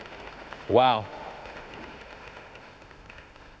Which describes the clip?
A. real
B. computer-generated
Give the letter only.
B